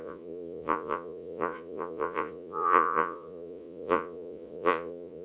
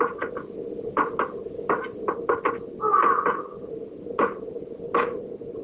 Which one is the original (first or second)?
second